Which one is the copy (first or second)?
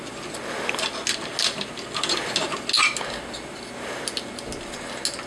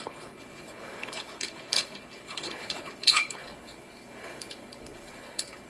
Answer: second